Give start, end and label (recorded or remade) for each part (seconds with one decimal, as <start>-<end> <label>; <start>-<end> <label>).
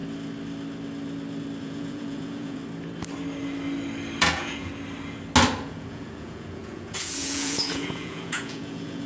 0.0-1.6 recorded; 1.6-2.6 remade; 2.6-4.2 recorded; 4.2-4.7 remade; 4.7-5.6 recorded; 5.6-9.1 remade